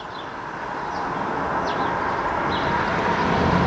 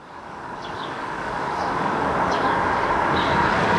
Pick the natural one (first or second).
first